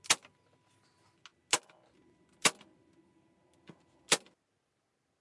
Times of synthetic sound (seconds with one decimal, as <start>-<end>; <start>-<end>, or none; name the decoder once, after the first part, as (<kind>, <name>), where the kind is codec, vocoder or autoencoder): none